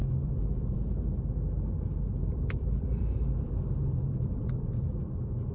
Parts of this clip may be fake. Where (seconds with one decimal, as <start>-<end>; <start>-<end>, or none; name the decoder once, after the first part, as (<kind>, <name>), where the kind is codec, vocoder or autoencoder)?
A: 0.0-0.8 (vocoder, BigVGAN v2); 2.2-5.0